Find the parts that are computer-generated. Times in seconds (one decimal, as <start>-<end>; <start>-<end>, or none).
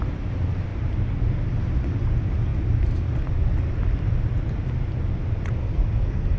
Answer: 5.6-6.4